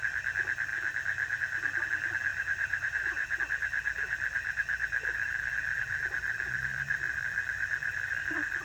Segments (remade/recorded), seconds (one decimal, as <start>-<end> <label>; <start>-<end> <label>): 0.0-2.3 recorded; 2.3-3.4 remade; 3.4-8.6 recorded